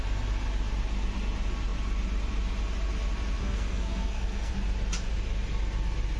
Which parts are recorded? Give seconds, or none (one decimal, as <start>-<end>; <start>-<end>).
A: 0.0-3.4; 4.5-6.2